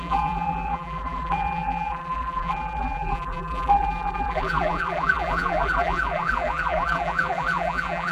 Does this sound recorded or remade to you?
remade